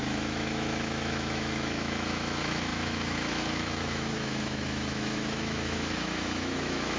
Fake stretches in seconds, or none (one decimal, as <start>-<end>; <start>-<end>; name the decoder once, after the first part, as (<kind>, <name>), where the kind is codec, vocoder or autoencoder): 0.0-7.0 (autoencoder, DAC-VAE)